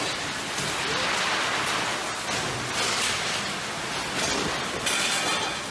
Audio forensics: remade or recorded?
recorded